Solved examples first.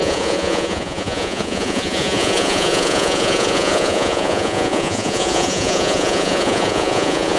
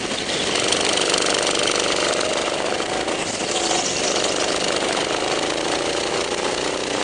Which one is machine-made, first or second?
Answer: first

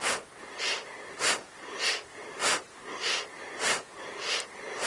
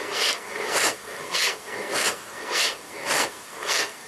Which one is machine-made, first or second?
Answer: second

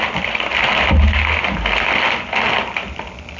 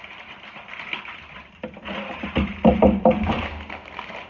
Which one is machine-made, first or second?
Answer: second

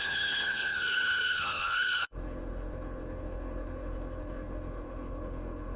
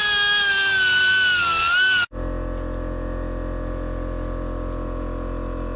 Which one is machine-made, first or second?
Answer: first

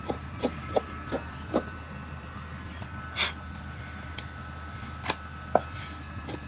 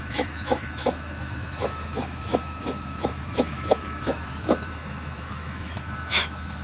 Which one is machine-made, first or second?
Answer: second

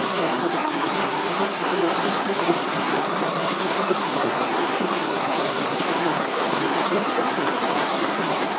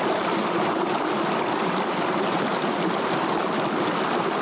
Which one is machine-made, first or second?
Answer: first